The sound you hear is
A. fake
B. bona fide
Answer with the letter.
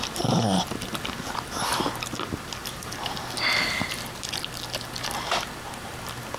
B